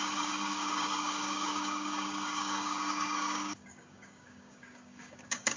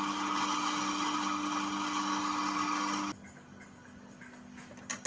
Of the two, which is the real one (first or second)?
second